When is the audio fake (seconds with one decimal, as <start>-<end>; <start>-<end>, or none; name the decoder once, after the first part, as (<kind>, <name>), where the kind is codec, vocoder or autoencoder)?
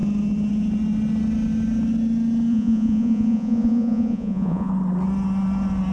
2.5-4.7 (vocoder, Vocos)